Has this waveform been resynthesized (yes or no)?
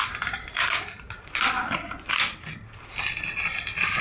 no